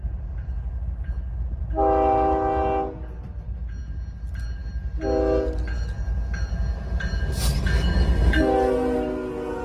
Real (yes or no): yes